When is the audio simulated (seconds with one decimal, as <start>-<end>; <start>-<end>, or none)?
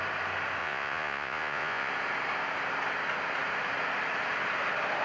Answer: 0.6-1.9